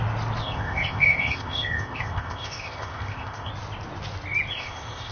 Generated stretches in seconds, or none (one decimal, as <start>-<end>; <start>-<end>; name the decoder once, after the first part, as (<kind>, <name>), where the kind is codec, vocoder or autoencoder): 0.4-3.5 (codec, ZipCodec); 4.5-5.1